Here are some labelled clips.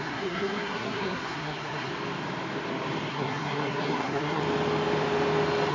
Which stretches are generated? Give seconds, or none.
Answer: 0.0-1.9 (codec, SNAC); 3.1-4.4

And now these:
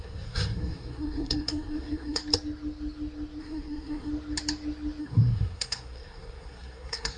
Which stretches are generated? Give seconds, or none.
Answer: 0.0-2.2 (codec, SNAC); 3.4-4.1; 5.0-7.2

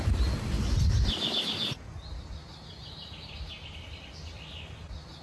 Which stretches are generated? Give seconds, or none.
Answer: none